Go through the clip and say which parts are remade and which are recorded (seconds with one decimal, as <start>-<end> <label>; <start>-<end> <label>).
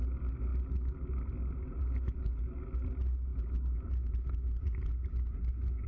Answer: 0.0-5.9 recorded